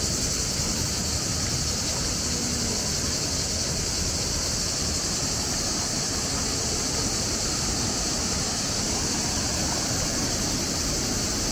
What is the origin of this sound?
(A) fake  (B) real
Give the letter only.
B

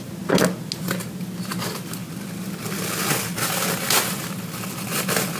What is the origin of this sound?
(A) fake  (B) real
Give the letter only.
B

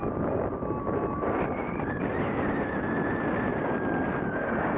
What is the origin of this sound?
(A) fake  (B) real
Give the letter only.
B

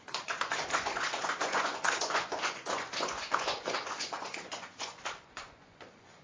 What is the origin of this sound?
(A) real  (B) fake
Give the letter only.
B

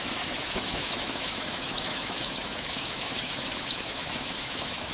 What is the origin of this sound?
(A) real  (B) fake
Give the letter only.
B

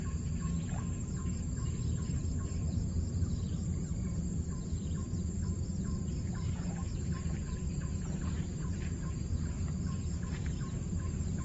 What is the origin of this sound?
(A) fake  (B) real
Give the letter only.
A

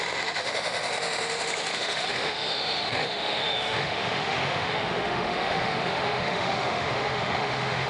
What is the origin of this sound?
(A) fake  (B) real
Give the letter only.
A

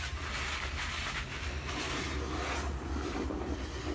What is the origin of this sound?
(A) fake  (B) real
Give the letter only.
B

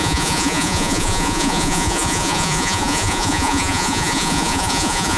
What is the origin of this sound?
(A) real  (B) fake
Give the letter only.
B